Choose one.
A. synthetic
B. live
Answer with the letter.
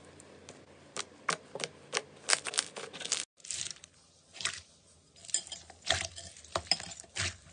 B